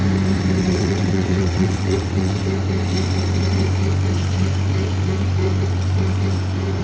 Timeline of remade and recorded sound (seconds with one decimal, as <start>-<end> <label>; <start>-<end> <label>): 0.0-0.6 recorded; 0.6-2.4 remade; 2.4-6.8 recorded